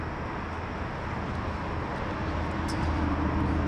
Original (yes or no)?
yes